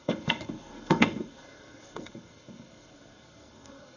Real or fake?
fake